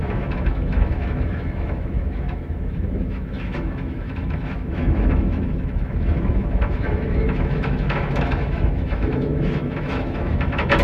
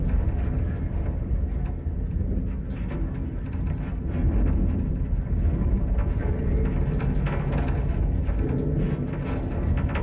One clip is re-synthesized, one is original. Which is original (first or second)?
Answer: second